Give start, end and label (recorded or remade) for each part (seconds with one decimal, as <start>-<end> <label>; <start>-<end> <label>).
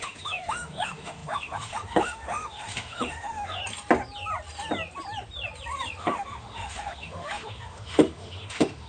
0.0-3.6 remade; 3.6-6.0 recorded; 6.0-8.9 remade